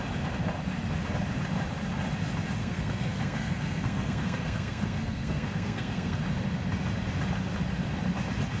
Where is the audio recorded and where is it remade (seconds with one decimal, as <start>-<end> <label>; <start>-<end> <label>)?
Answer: 0.0-2.6 recorded; 2.6-6.2 remade; 6.2-8.6 recorded